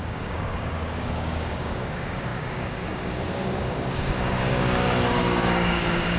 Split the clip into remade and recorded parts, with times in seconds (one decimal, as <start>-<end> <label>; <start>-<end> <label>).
0.0-6.2 remade